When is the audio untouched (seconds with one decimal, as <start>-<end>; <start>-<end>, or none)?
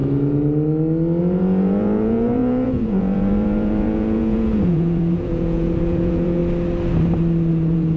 0.0-1.2; 6.4-7.5